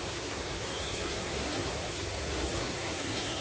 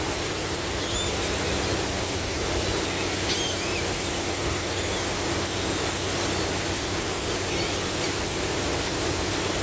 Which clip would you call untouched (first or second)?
second